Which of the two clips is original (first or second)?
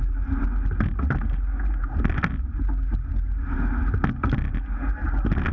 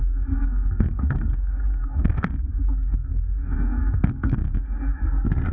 first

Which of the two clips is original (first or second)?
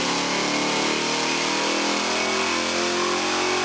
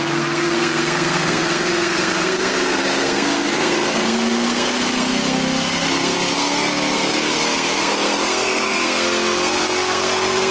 first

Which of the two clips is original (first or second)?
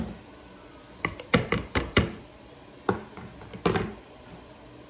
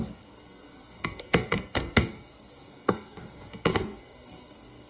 first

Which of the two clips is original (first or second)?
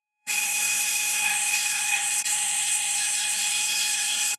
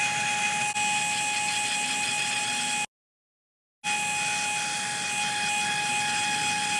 second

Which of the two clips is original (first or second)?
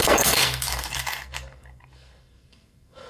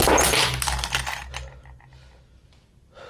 second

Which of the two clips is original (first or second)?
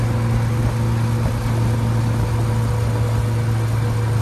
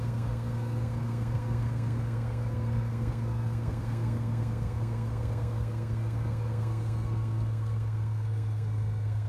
first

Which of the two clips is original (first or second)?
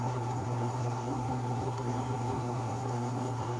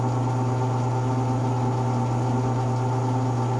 second